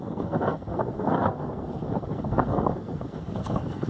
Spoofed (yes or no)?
yes